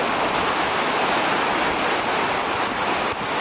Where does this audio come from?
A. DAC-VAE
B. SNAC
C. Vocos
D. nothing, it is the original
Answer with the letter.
D